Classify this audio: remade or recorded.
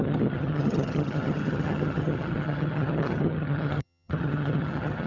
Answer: remade